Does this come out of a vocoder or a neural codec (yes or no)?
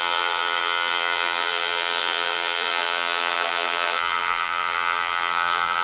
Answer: yes